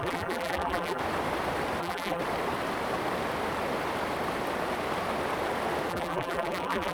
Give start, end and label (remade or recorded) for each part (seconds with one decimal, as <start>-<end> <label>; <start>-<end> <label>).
0.0-1.0 remade; 1.0-1.8 recorded; 1.8-2.2 remade; 2.2-5.9 recorded; 5.9-6.9 remade